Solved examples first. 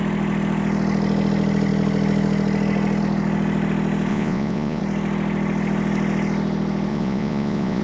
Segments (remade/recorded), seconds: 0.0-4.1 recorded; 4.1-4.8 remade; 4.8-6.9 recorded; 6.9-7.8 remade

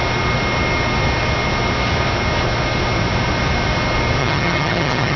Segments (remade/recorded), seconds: 0.0-4.2 recorded; 4.2-5.2 remade

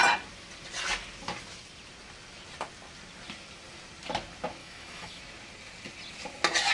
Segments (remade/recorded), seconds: 0.0-4.6 recorded; 4.6-5.2 remade; 5.2-6.7 recorded